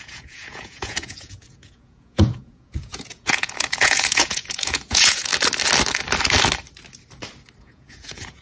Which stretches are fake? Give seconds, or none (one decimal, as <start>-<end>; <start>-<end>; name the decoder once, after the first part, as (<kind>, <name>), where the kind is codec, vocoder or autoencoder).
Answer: 0.0-5.3 (vocoder, Vocos); 7.6-8.4